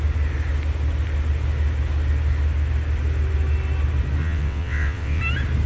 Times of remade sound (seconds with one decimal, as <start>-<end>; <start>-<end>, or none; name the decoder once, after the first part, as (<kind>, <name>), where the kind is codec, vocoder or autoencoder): 4.2-5.2 (vocoder, WaveNeXt)